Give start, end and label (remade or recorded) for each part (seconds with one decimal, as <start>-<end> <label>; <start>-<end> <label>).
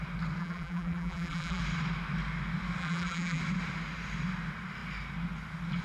0.0-0.4 recorded; 0.4-1.6 remade; 1.6-2.8 recorded; 2.8-3.4 remade; 3.4-5.8 recorded